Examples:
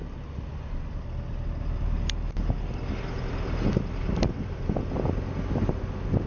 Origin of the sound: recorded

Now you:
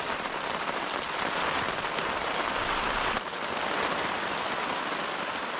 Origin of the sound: remade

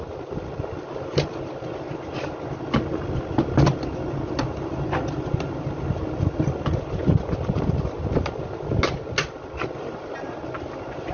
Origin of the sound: recorded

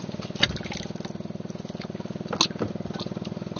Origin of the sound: recorded